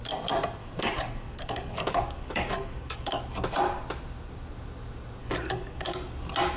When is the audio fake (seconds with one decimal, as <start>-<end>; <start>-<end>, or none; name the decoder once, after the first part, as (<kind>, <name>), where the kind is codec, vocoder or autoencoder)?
0.6-3.2 (codec, DAC); 5.2-5.9